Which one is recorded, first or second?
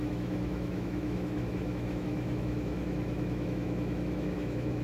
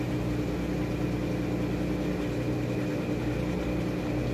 second